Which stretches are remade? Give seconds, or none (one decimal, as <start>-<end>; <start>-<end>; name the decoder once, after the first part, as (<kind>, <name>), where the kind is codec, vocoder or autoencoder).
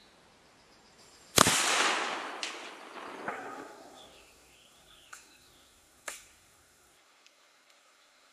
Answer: 3.3-8.3 (codec, SNAC)